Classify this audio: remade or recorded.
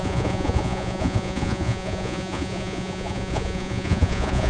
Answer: remade